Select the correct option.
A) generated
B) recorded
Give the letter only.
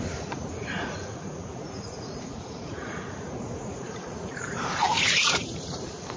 A